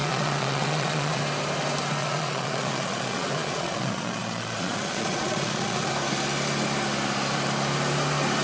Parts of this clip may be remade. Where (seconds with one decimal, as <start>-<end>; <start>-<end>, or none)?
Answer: 0.0-1.2; 2.0-5.9